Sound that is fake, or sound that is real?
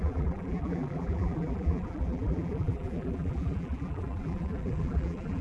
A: fake